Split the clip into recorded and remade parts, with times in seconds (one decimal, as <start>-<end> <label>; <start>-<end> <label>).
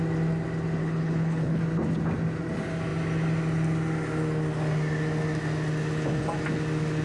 0.0-0.8 recorded; 0.8-1.6 remade; 1.6-7.0 recorded